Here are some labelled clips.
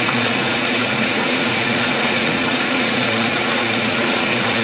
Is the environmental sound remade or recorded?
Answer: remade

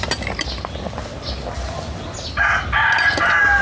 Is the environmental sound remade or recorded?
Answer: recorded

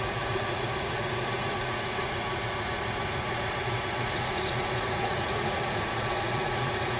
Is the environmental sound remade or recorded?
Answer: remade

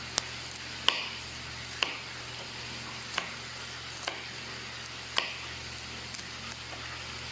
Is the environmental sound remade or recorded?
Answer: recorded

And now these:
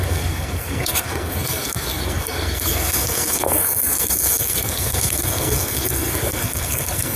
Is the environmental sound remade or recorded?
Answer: remade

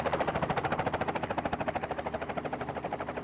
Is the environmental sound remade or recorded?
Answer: recorded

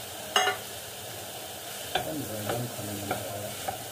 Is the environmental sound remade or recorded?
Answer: recorded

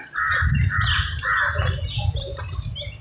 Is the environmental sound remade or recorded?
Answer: recorded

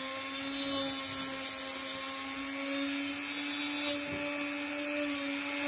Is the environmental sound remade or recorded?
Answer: recorded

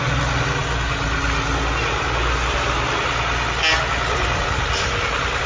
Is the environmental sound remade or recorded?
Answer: recorded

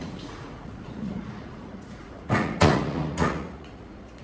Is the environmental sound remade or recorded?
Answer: remade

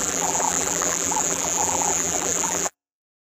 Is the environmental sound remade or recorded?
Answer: remade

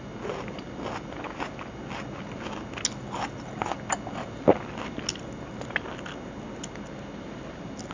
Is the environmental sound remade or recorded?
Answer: recorded